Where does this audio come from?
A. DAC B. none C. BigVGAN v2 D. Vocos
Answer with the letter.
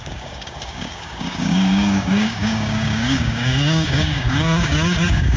A